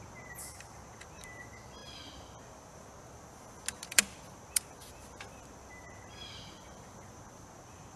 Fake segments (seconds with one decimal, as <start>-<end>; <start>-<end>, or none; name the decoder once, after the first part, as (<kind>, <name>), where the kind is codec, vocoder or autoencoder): none